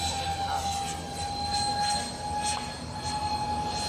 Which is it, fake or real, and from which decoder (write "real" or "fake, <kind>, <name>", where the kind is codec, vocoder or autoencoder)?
real